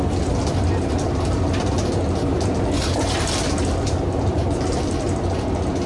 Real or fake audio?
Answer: real